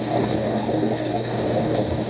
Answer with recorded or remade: remade